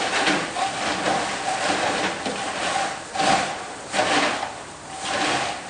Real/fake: real